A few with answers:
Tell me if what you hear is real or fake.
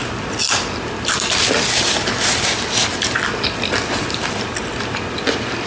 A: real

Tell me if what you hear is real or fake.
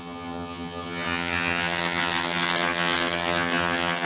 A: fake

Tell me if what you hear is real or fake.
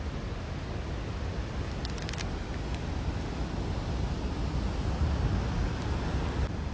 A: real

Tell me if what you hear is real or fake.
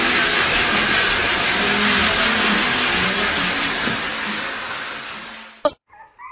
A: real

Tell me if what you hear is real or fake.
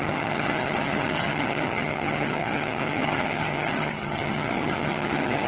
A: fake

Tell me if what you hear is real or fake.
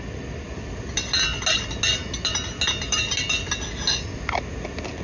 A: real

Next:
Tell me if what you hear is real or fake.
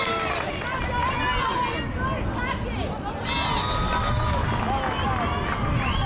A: real